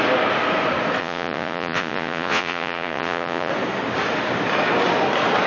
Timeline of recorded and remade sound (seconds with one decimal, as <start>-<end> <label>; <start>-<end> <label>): 0.0-1.0 recorded; 1.0-3.5 remade; 3.5-5.5 recorded